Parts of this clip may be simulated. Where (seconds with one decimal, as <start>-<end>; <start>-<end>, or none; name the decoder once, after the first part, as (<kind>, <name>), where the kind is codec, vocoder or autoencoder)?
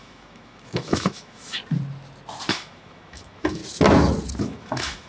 0.0-1.6 (autoencoder, DAC-VAE); 2.5-3.6; 4.4-5.1